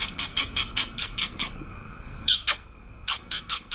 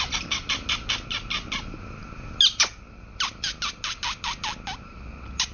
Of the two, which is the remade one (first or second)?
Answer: first